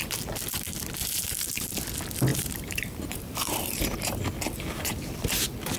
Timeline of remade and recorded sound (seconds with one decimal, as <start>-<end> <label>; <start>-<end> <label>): 0.0-1.0 recorded; 1.0-1.7 remade; 1.7-2.3 recorded; 2.3-4.2 remade; 4.2-5.8 recorded